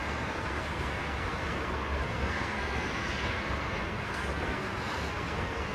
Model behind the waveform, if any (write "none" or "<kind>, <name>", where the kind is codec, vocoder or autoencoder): codec, SNAC